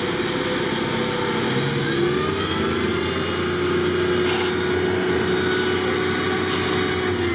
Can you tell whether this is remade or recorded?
recorded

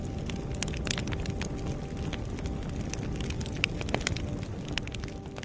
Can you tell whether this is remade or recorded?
recorded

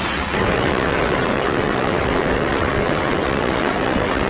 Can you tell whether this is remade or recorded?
remade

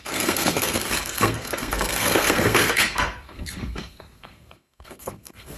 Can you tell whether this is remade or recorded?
remade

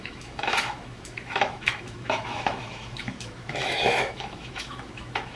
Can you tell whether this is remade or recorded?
remade